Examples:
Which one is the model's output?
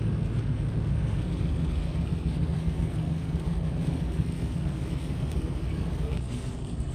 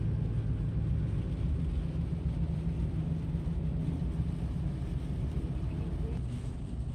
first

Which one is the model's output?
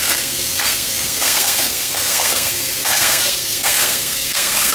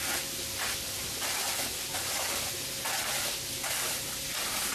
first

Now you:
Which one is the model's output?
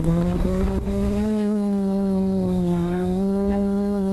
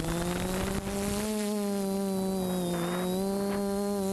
first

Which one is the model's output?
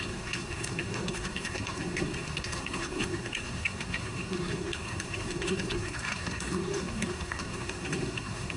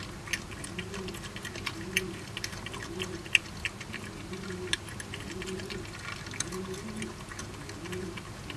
first